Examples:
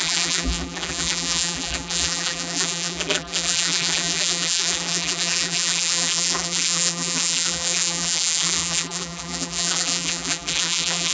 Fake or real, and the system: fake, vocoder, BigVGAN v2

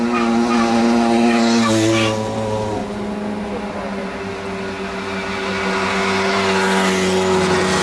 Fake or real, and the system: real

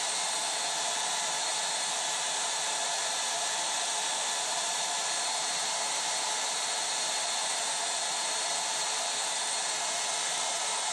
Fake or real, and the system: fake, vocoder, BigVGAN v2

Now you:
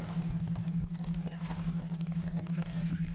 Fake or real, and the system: fake, codec, DAC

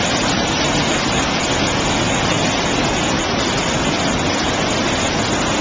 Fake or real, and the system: real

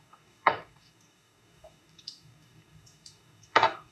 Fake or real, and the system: fake, codec, DAC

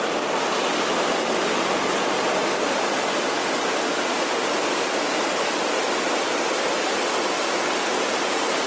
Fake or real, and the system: real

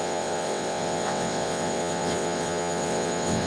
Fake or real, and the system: fake, vocoder, WaveNeXt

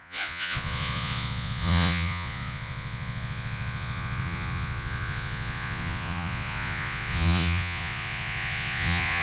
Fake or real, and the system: fake, vocoder, Vocos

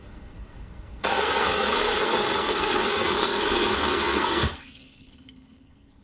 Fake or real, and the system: fake, codec, SNAC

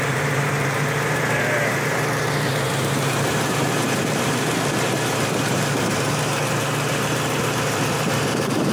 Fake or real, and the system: fake, vocoder, BigVGAN v2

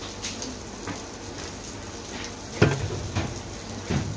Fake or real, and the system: real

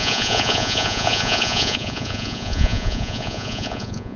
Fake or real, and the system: fake, vocoder, Vocos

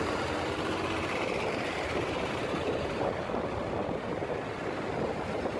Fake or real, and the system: real